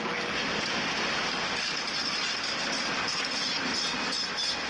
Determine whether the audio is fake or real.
real